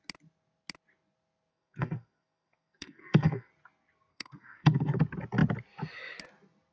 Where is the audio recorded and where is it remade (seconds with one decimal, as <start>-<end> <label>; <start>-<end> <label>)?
0.0-1.5 recorded; 1.5-3.5 remade; 3.5-4.1 recorded; 4.1-5.0 remade; 5.0-6.7 recorded